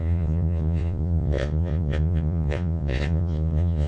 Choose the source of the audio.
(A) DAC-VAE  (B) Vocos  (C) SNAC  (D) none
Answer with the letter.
B